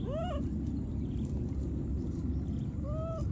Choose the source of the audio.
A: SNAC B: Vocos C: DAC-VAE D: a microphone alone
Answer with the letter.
D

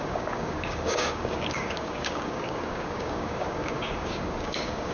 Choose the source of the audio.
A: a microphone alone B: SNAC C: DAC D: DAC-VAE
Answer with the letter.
C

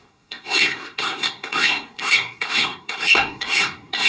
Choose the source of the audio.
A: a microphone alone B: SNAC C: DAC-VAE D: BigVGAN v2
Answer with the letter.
B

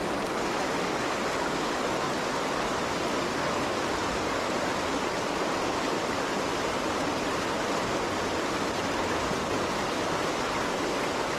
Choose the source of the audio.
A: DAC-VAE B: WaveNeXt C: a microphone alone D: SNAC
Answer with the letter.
C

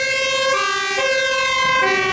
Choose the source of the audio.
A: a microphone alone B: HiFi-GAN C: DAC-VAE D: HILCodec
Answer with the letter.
A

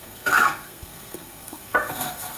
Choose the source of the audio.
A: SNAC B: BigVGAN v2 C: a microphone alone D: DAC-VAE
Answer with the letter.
A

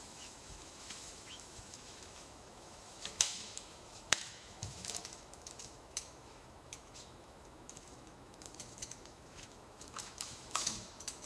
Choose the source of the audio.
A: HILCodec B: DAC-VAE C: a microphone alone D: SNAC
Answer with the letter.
B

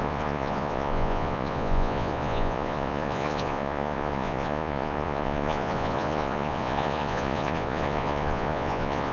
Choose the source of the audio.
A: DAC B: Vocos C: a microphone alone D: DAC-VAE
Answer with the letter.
B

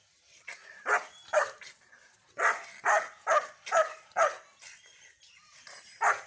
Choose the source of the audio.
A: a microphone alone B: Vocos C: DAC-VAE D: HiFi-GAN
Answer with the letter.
A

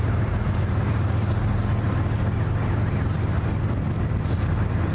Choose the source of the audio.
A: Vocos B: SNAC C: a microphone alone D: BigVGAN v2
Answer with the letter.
C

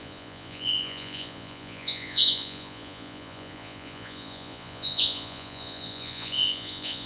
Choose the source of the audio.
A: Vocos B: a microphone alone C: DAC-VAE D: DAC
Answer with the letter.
A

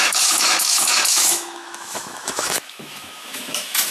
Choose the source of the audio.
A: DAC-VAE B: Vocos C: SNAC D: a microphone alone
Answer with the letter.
A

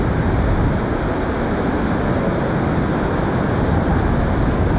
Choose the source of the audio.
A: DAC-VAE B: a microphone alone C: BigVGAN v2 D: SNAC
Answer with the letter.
B